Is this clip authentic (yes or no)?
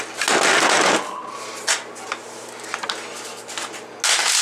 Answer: yes